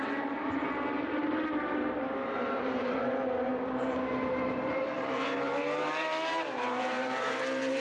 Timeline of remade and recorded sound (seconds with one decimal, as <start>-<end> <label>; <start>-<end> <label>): 0.0-3.5 remade; 3.5-4.7 recorded; 4.7-7.8 remade